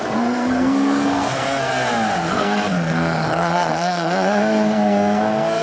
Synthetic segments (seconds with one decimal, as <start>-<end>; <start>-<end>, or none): 0.0-1.7; 2.3-5.6